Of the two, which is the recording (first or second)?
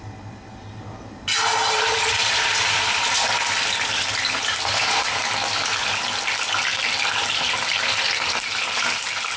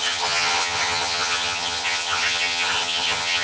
first